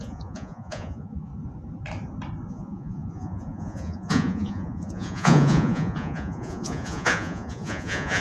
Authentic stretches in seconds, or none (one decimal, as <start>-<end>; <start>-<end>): 1.3-2.5